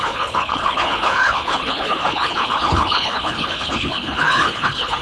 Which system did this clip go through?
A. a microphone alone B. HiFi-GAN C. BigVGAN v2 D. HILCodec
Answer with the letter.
D